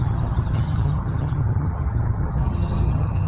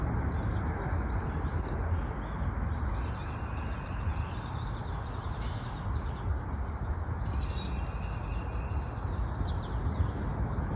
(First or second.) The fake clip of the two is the first